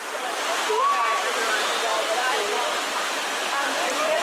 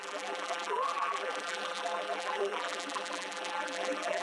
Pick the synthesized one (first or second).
second